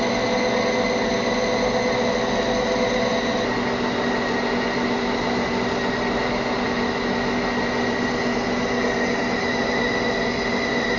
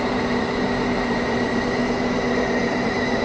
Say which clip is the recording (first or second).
first